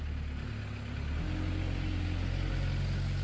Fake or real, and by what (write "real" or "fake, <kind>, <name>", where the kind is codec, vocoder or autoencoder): real